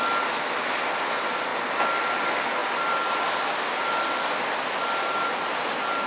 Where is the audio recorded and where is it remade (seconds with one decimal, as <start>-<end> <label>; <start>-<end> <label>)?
0.0-6.1 recorded